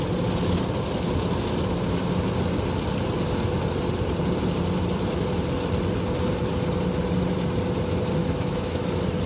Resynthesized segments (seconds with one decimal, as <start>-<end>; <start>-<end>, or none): 8.2-8.9